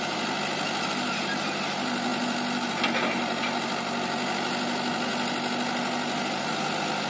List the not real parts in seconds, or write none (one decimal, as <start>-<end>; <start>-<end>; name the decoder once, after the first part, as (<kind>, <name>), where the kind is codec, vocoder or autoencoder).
none